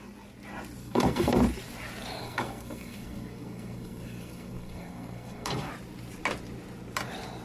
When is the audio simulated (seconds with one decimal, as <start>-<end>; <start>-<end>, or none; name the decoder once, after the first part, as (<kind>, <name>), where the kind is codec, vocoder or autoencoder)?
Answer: 0.8-1.4 (codec, SNAC); 2.2-5.7